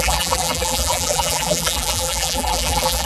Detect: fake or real fake